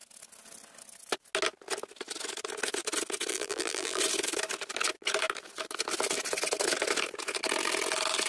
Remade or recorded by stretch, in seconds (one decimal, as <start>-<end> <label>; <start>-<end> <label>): 0.0-3.3 recorded; 3.3-4.0 remade; 4.0-8.3 recorded